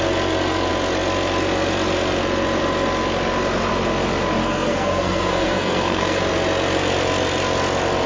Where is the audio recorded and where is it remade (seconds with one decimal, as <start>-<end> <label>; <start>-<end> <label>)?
0.0-4.4 recorded; 4.4-6.2 remade; 6.2-8.1 recorded